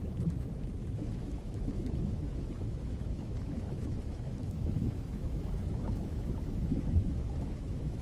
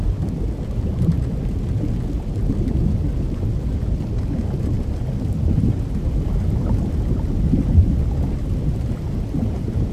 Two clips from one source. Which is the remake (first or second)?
first